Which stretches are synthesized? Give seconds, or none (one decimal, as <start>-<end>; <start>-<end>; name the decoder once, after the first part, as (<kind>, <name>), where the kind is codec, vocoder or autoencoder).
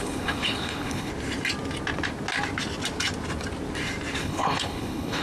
0.0-1.1 (codec, HILCodec); 4.2-5.2